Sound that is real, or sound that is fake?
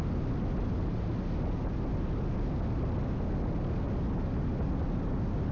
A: real